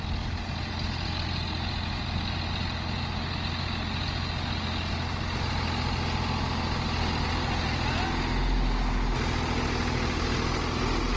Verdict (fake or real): real